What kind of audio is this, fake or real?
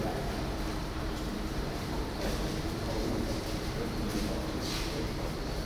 fake